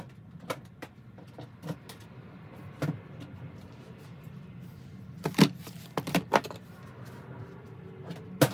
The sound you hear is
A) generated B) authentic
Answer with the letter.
B